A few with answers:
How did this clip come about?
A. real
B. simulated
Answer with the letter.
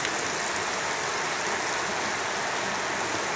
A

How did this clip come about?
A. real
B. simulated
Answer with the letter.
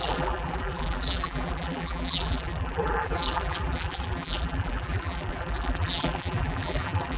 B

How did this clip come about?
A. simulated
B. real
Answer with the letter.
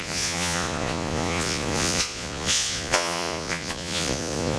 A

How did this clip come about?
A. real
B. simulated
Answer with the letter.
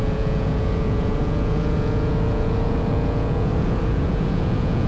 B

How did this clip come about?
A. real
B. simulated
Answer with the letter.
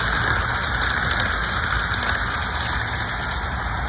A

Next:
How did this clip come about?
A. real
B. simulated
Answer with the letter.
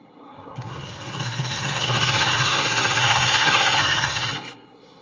B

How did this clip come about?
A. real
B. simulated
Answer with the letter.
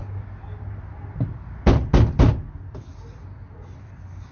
A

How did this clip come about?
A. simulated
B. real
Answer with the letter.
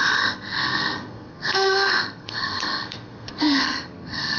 A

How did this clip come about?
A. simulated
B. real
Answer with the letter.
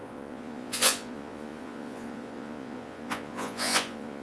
A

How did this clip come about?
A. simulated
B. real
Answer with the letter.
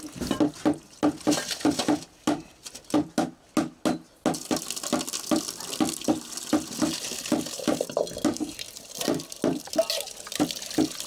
B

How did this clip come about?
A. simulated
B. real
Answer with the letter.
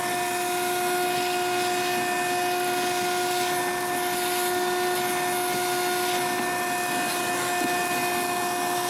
B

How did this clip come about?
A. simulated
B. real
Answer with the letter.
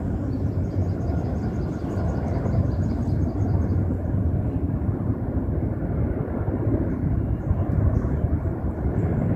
B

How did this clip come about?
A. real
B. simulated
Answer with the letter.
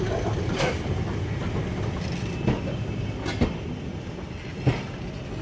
A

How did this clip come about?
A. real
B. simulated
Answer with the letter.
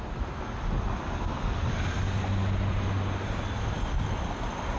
A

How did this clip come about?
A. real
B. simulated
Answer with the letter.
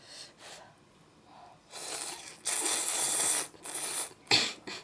A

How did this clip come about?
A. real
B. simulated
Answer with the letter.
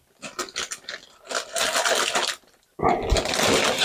A